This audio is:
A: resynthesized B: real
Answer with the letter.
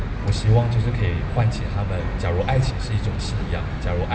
B